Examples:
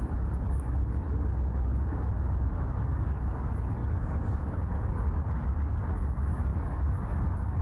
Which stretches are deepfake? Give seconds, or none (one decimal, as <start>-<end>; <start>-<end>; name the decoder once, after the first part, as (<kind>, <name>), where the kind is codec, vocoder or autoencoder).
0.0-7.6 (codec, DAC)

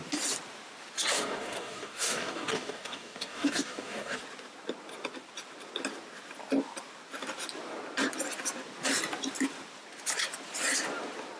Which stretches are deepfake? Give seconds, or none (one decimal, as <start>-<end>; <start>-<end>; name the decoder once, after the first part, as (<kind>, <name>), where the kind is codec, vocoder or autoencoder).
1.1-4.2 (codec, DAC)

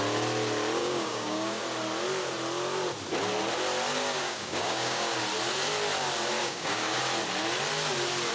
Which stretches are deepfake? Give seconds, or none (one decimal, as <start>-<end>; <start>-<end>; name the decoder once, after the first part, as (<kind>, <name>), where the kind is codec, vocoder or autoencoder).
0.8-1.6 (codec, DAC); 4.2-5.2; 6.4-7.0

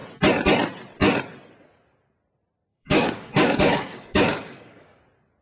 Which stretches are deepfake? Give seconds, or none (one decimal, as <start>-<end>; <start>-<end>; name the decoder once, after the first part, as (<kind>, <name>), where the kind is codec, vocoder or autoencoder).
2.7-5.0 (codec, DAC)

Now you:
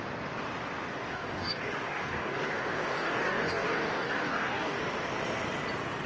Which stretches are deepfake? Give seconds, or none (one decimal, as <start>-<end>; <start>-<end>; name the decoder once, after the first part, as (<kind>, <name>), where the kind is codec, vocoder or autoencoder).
1.1-4.8 (codec, DAC)

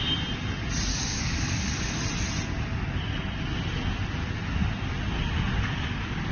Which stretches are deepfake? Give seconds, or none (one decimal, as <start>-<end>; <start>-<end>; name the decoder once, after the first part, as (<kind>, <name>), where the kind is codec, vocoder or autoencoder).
0.9-2.0 (codec, DAC)

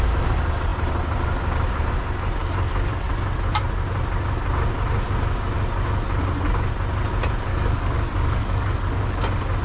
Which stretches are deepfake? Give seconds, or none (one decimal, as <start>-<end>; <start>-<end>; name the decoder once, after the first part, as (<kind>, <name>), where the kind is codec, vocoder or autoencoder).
2.4-3.1 (codec, DAC); 7.5-9.2

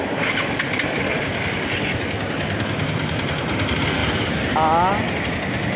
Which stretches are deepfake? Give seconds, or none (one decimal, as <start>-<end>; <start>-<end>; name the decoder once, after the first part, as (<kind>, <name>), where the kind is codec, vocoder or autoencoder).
none